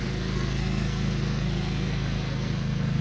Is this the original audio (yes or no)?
no